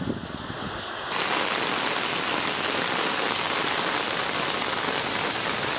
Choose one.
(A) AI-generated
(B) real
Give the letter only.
B